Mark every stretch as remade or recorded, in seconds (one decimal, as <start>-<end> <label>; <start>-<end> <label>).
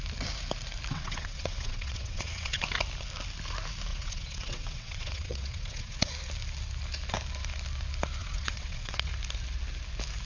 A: 0.0-0.9 recorded; 0.9-2.6 remade; 2.6-3.9 recorded; 3.9-6.1 remade; 6.1-8.2 recorded; 8.2-9.1 remade; 9.1-10.2 recorded